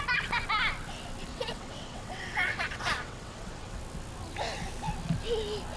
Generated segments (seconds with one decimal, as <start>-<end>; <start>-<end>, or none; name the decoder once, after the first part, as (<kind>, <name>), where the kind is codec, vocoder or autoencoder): 1.3-3.8 (vocoder, WaveNeXt)